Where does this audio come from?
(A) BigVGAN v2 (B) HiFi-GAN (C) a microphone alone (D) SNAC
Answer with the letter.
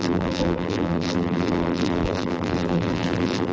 A